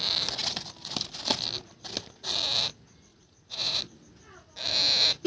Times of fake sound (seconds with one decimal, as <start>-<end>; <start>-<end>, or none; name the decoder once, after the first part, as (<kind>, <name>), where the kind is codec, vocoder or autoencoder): 3.1-3.8 (vocoder, Vocos)

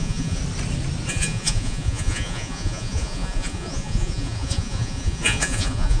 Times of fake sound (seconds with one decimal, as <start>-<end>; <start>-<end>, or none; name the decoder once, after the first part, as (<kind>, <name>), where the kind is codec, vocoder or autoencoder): 0.0-0.4 (vocoder, Vocos); 1.1-6.0

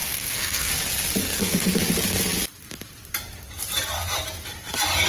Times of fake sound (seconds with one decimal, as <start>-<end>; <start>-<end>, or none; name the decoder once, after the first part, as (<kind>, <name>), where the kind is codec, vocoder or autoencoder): 0.0-0.7 (codec, SNAC); 1.2-1.8

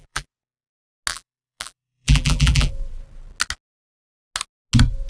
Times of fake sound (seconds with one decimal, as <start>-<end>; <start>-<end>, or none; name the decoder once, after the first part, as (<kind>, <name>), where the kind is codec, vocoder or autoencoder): 0.0-0.7 (vocoder, BigVGAN v2); 1.1-2.7

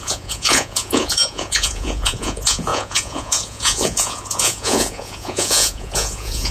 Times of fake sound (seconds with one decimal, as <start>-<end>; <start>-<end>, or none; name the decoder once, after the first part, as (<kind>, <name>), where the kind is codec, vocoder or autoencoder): 0.0-6.5 (vocoder, Vocos)

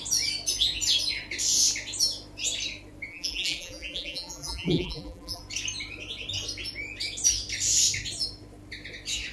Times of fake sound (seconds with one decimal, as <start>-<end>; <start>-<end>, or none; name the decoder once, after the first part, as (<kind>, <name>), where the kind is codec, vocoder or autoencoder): 3.1-5.4 (vocoder, BigVGAN v2)